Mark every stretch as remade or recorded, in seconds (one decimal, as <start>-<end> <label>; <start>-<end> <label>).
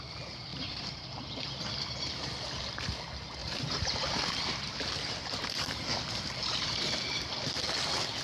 0.0-0.5 recorded; 0.5-1.2 remade; 1.2-3.4 recorded; 3.4-7.3 remade; 7.3-8.2 recorded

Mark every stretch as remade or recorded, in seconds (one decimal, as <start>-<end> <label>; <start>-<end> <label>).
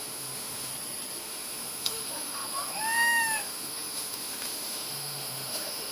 0.0-0.7 remade; 0.7-1.2 recorded; 1.2-5.9 remade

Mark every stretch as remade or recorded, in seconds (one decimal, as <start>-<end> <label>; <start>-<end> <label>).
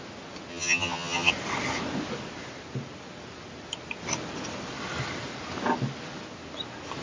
0.0-0.5 recorded; 0.5-1.3 remade; 1.3-7.0 recorded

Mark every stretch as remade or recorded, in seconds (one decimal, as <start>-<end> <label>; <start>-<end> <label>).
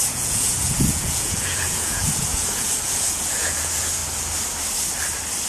0.0-4.0 remade; 4.0-5.5 recorded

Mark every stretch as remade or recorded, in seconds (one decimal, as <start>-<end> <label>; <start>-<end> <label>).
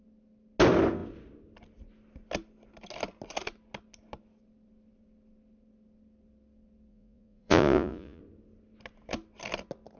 0.0-6.9 recorded; 6.9-8.2 remade; 8.2-10.0 recorded